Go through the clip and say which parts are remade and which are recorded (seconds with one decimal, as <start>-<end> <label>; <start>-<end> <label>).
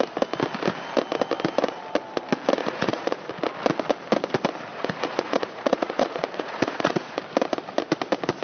0.0-2.6 recorded; 2.6-3.3 remade; 3.3-4.7 recorded; 4.7-7.2 remade; 7.2-8.4 recorded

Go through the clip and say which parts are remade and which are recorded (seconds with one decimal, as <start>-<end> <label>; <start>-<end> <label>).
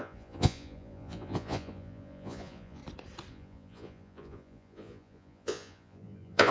0.0-2.8 remade; 2.8-3.3 recorded; 3.3-6.5 remade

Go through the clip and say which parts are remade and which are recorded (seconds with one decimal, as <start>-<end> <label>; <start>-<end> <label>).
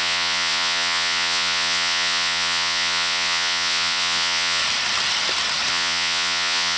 0.0-4.6 remade; 4.6-5.7 recorded; 5.7-6.8 remade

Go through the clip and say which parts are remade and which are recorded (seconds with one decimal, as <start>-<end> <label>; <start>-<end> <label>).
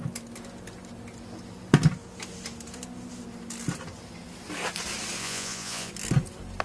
0.0-5.2 recorded; 5.2-5.9 remade; 5.9-6.6 recorded